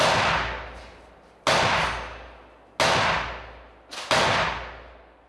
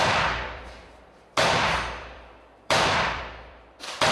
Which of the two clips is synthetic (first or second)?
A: second